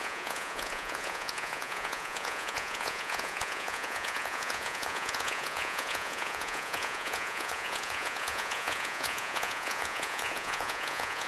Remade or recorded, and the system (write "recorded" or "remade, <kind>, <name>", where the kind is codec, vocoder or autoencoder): remade, vocoder, Vocos